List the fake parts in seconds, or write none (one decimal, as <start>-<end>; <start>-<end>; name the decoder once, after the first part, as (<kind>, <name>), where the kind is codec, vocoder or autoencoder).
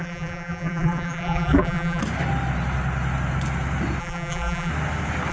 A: 0.0-2.0 (vocoder, BigVGAN v2); 4.0-4.7